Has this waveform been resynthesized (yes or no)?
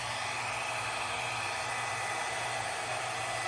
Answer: no